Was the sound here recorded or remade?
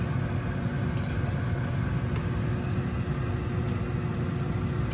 recorded